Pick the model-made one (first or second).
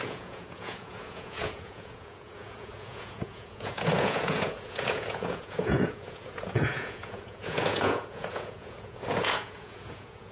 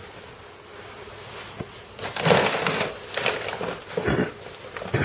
first